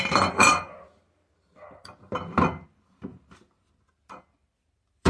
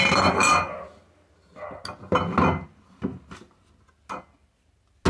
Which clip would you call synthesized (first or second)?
first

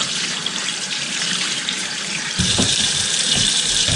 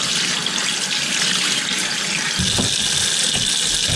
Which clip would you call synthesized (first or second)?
first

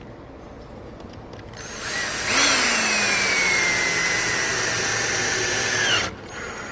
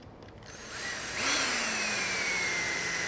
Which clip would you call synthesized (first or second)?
second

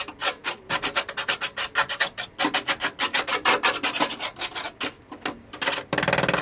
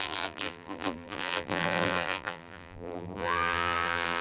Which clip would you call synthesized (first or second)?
second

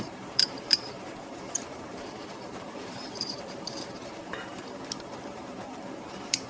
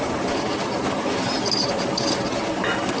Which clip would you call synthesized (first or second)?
first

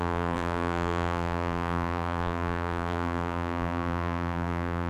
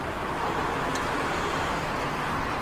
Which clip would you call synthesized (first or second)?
first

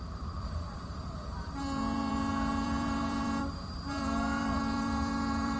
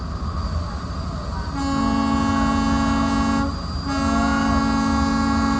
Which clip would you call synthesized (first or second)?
first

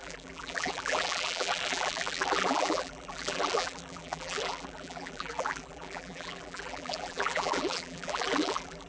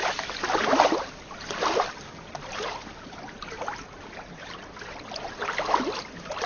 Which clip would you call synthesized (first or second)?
first